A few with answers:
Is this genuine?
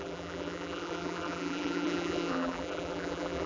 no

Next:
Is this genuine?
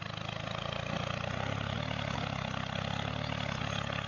yes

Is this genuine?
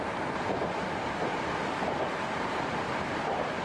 no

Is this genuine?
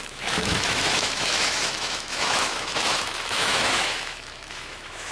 no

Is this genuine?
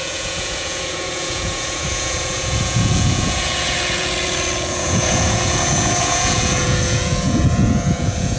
no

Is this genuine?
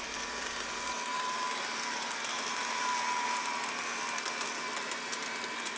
yes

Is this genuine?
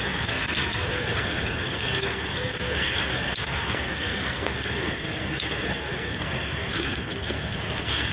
no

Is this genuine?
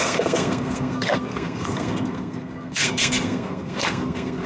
no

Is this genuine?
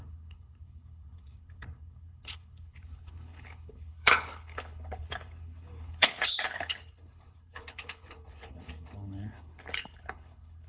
no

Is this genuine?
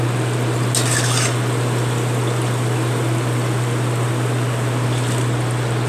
yes